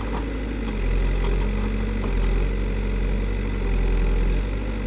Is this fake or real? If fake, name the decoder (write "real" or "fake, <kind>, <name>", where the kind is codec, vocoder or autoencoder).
real